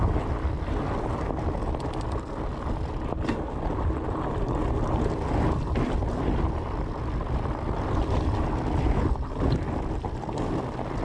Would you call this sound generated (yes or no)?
no